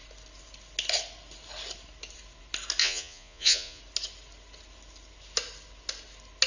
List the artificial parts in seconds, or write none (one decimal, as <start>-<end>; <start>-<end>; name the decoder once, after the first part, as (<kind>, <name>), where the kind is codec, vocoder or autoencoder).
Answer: 2.8-3.8 (vocoder, Vocos)